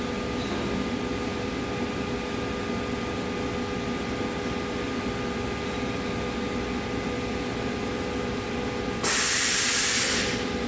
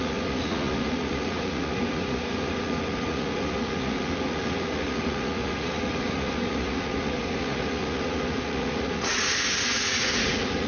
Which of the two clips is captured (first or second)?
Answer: first